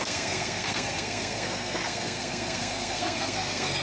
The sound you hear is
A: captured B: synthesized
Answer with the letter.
B